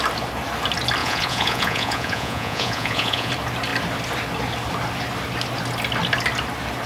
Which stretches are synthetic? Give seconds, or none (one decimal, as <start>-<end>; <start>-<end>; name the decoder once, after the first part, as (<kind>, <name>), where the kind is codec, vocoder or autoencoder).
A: 1.0-3.3 (vocoder, Vocos)